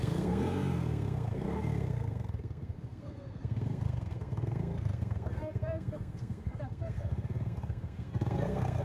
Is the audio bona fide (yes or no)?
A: no